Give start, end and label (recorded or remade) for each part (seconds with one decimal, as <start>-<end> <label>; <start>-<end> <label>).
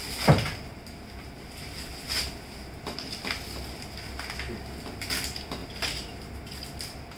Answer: 0.0-5.6 recorded; 5.6-6.2 remade; 6.2-7.2 recorded